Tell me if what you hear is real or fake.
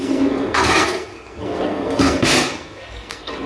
fake